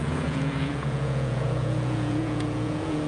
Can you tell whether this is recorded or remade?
remade